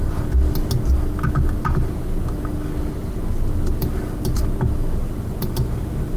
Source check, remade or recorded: recorded